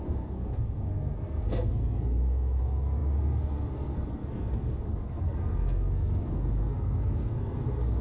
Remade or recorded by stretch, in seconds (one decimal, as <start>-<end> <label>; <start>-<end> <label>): 0.0-8.0 remade

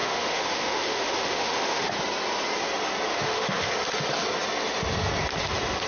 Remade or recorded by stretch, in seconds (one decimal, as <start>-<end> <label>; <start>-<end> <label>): 0.0-1.9 remade; 1.9-3.1 recorded; 3.1-3.7 remade; 3.7-5.9 recorded

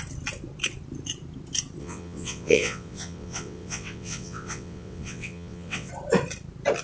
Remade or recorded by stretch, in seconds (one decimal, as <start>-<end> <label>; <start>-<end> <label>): 0.0-1.8 recorded; 1.8-5.9 remade; 5.9-6.8 recorded

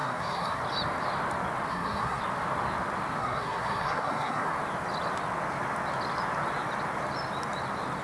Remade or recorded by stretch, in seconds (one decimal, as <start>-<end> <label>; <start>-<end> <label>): 0.0-0.6 remade; 0.6-1.7 recorded; 1.7-2.2 remade; 2.2-3.2 recorded; 3.2-4.5 remade; 4.5-8.0 recorded

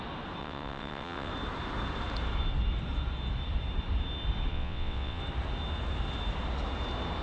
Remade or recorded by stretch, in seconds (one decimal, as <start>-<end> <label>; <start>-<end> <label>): 0.0-0.4 recorded; 0.4-1.3 remade; 1.3-4.5 recorded; 4.5-5.2 remade; 5.2-7.2 recorded

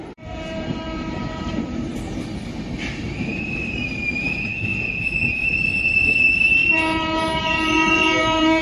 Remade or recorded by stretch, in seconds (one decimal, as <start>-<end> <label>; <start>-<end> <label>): 0.0-1.9 remade; 1.9-3.0 recorded; 3.0-4.7 remade; 4.7-5.3 recorded; 5.3-8.6 remade